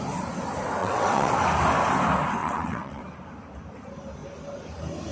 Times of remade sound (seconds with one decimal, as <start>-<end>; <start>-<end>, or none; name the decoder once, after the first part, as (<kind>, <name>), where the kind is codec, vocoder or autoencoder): 0.8-1.3 (vocoder, WaveNeXt); 2.4-3.0